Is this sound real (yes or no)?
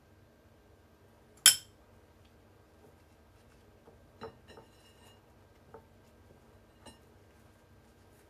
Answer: yes